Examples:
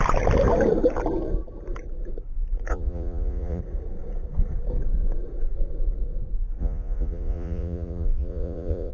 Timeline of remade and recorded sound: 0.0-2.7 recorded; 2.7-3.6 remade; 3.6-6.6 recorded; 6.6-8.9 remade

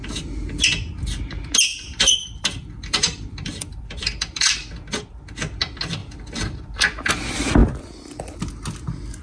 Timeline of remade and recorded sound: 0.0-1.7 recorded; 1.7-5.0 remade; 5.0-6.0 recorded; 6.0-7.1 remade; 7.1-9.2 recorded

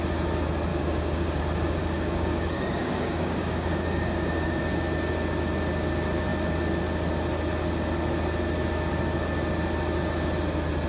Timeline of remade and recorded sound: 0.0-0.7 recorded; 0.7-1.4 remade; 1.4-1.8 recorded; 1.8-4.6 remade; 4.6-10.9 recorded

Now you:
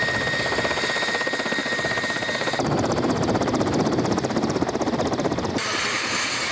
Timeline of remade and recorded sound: 0.0-1.6 recorded; 1.6-5.5 remade; 5.5-6.5 recorded